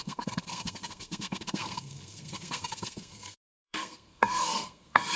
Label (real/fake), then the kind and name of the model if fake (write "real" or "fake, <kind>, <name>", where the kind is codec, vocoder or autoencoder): fake, codec, SNAC